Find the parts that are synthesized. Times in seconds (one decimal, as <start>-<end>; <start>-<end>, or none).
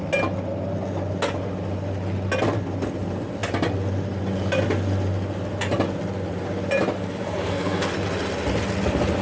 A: 7.0-7.9